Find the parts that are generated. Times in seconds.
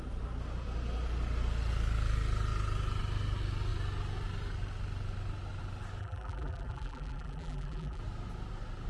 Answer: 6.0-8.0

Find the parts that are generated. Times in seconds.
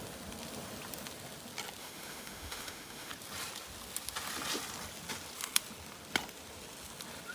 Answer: 1.8-3.1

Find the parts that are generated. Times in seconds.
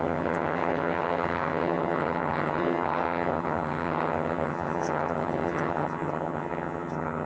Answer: 0.0-7.3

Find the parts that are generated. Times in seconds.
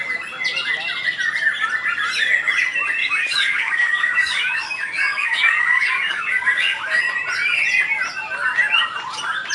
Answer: 3.0-7.0